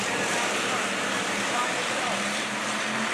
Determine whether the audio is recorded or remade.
remade